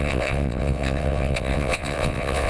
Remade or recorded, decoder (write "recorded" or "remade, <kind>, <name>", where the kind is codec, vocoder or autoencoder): remade, vocoder, WaveNeXt